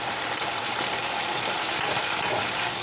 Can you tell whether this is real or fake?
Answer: fake